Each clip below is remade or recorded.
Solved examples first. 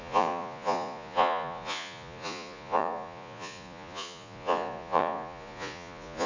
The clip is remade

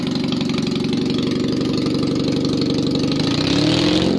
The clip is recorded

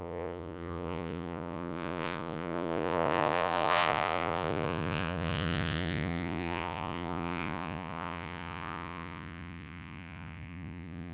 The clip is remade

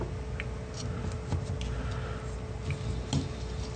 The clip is recorded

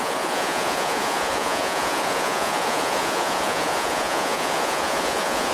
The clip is remade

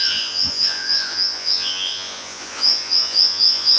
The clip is remade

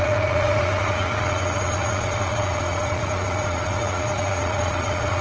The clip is remade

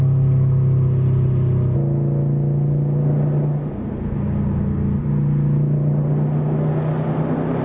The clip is recorded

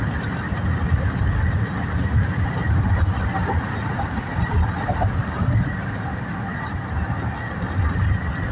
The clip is recorded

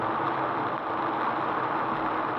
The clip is recorded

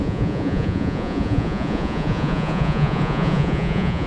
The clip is remade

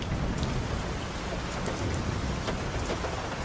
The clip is recorded